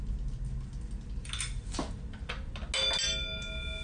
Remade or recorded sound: recorded